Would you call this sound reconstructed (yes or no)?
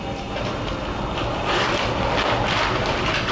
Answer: no